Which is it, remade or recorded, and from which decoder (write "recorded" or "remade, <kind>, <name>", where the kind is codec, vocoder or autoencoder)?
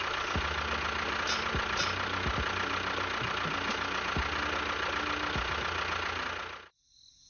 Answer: recorded